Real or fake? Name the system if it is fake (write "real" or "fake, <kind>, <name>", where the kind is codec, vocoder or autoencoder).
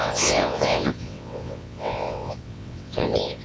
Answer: fake, vocoder, WaveNeXt